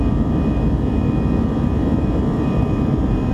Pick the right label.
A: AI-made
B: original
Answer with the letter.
A